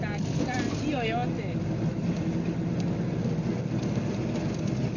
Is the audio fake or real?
real